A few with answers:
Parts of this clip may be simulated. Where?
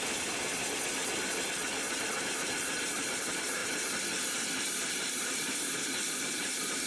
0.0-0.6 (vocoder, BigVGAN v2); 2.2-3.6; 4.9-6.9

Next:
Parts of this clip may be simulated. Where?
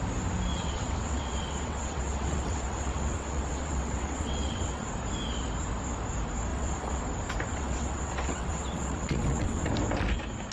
0.5-4.9 (vocoder, WaveNeXt); 6.5-7.0; 7.5-9.7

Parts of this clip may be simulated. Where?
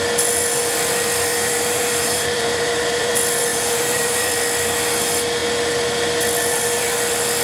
1.3-3.1 (vocoder, BigVGAN v2); 3.5-4.3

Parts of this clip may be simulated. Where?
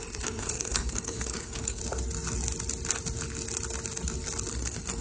0.0-1.8 (codec, SNAC); 4.5-5.0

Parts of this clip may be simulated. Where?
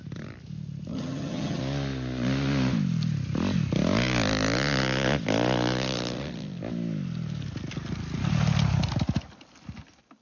0.9-1.6 (vocoder, HiFi-GAN)